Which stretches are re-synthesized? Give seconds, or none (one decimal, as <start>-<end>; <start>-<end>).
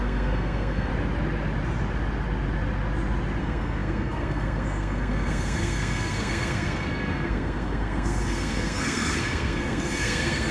0.0-0.9; 3.4-10.5